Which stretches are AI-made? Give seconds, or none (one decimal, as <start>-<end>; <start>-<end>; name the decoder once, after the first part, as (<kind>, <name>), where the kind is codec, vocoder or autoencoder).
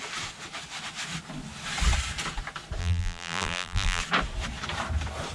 2.8-4.0 (vocoder, BigVGAN v2)